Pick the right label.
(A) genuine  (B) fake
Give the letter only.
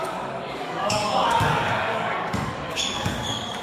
B